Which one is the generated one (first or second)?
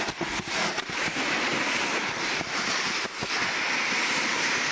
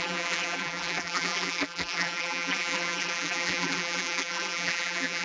second